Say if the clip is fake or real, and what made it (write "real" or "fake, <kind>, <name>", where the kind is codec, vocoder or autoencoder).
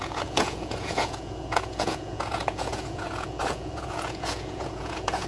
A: fake, vocoder, Vocos